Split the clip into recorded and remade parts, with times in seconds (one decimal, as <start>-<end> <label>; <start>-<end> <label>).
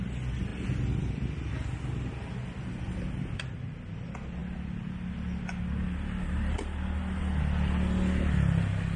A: 0.0-9.0 recorded